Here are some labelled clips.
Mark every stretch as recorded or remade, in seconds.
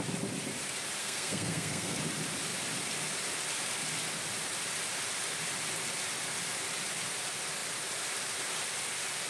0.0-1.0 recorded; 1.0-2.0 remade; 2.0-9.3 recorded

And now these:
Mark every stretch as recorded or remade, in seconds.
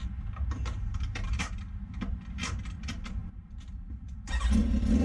0.0-0.7 recorded; 0.7-1.5 remade; 1.5-3.2 recorded; 3.2-4.4 remade; 4.4-5.0 recorded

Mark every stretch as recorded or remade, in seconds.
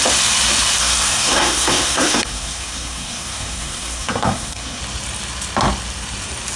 0.0-0.8 recorded; 0.8-4.8 remade; 4.8-6.6 recorded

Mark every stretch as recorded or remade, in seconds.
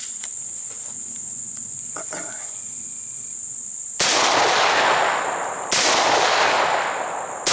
0.0-3.0 remade; 3.0-7.5 recorded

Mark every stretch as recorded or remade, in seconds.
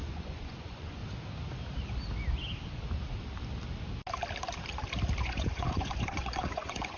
0.0-1.0 remade; 1.0-5.2 recorded; 5.2-7.0 remade